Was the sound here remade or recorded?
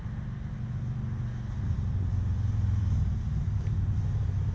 recorded